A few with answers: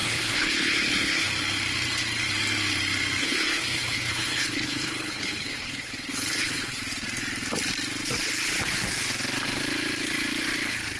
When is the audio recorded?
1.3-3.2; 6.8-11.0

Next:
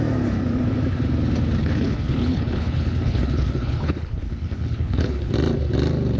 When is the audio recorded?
0.0-1.6; 5.3-6.2

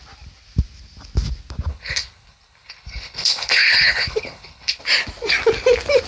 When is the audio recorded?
0.0-1.7; 4.8-6.1